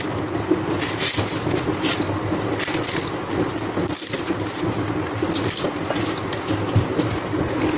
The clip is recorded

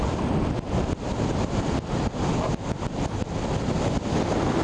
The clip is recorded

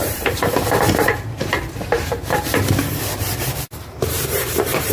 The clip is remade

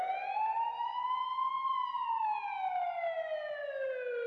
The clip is recorded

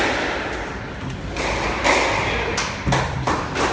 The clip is recorded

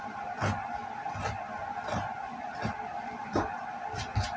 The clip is recorded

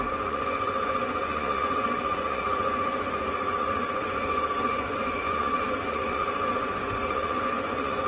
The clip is remade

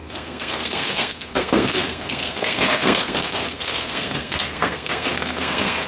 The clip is remade